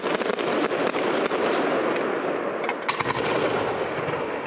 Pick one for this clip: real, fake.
real